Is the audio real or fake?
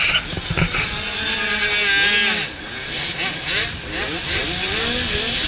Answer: real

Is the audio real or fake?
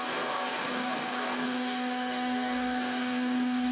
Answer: fake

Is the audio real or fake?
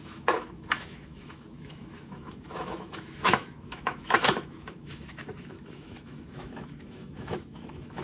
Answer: fake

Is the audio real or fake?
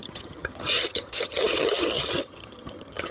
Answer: fake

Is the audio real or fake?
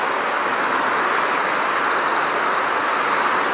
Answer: real